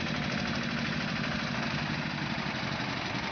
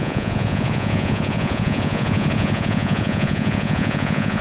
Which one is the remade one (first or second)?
second